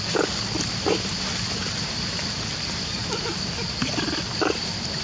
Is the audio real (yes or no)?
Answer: yes